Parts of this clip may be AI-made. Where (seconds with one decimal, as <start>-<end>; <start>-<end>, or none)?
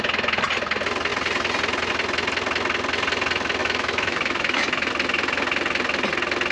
3.6-4.9